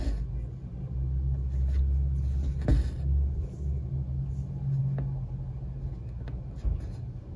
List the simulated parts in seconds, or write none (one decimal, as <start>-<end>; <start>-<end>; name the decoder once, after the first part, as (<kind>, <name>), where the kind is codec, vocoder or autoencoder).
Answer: none